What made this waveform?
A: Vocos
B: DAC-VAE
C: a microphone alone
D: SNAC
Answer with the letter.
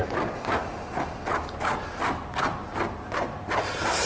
C